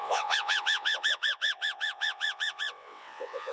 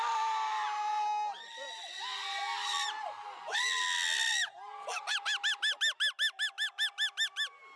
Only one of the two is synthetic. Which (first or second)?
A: first